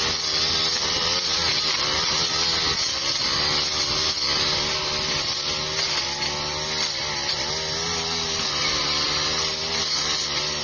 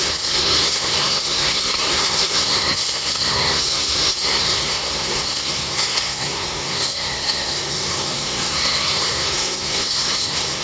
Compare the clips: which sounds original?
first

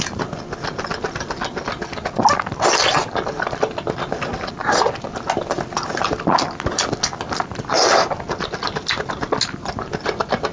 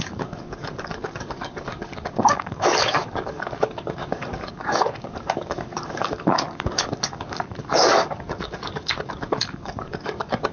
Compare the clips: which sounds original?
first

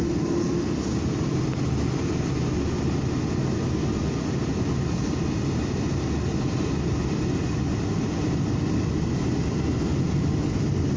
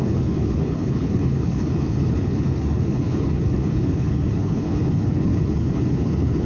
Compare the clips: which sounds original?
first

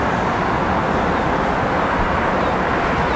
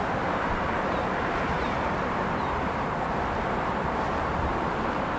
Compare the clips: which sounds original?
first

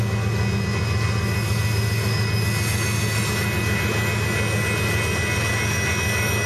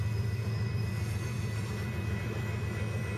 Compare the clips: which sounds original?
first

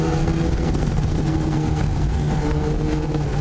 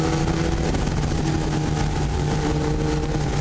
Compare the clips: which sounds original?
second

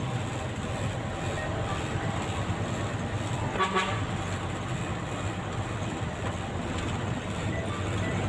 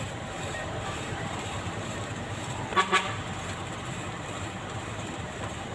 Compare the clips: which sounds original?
first